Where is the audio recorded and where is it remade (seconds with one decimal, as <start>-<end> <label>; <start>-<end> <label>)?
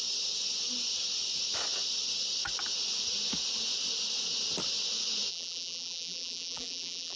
0.0-5.3 recorded; 5.3-7.2 remade